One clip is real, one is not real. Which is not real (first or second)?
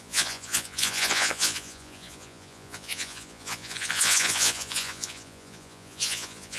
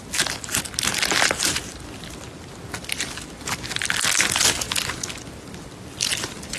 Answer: first